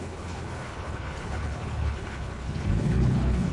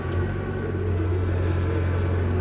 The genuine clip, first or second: second